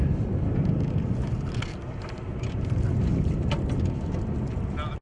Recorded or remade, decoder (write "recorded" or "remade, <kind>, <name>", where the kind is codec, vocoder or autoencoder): recorded